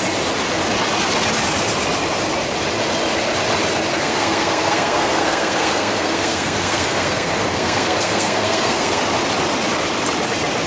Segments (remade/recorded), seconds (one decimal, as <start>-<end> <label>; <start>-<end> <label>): 0.0-3.9 recorded; 3.9-9.0 remade; 9.0-10.7 recorded